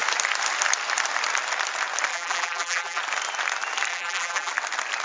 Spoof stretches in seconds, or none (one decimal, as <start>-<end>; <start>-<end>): 2.1-3.0; 3.9-4.5